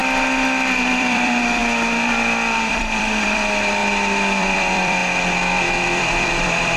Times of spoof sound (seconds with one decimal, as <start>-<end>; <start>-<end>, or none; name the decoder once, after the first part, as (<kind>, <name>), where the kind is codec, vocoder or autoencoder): 0.9-1.6 (vocoder, BigVGAN v2); 2.7-3.8; 4.4-5.0; 5.8-6.8